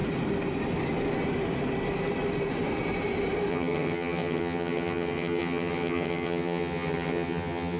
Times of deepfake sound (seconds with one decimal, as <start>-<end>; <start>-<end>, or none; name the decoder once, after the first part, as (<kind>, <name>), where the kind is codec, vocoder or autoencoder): 3.5-7.8 (vocoder, HiFi-GAN)